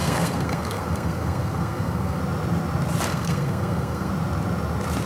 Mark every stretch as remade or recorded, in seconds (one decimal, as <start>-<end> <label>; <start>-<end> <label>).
0.0-2.2 remade; 2.2-3.1 recorded; 3.1-4.1 remade; 4.1-5.1 recorded